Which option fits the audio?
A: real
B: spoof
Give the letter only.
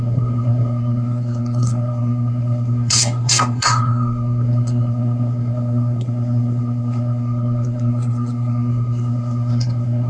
B